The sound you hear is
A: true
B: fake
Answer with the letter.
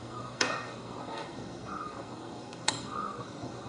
B